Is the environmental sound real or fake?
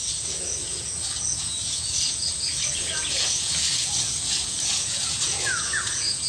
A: fake